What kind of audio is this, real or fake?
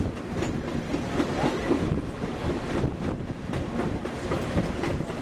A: real